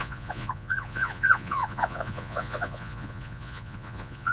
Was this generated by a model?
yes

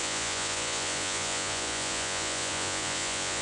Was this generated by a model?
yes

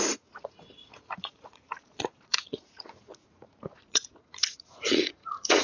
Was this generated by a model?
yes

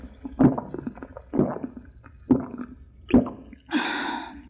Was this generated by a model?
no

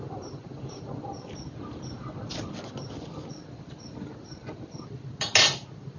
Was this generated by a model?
no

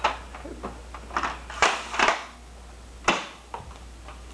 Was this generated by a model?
no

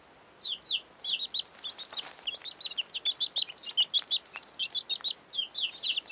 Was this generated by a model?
no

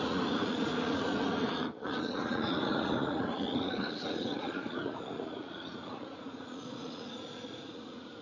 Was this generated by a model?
yes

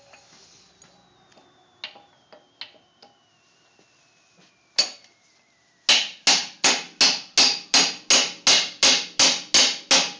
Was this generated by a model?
no